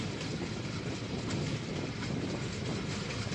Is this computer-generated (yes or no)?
yes